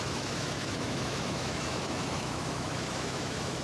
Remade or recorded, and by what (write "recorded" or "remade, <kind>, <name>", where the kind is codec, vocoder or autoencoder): remade, autoencoder, DAC-VAE